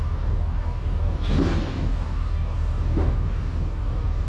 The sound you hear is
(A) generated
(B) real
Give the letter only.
A